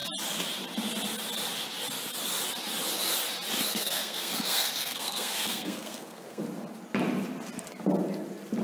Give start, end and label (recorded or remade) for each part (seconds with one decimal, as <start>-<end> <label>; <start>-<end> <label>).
0.0-3.7 recorded; 3.7-6.4 remade; 6.4-8.6 recorded